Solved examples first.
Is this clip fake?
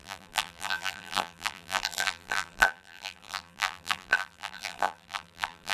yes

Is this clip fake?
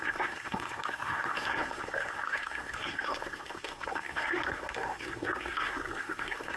yes